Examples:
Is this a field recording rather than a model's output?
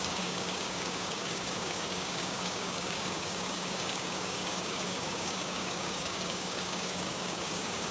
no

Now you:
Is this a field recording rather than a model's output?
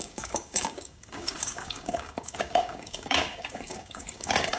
no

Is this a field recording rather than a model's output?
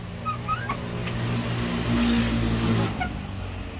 yes